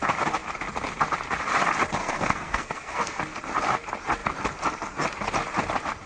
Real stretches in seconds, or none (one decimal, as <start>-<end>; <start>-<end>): 0.0-2.0; 3.2-6.1